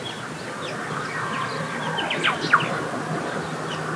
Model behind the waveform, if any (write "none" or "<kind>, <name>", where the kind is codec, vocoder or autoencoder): none